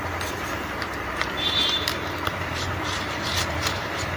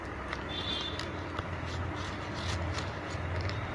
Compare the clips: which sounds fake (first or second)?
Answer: first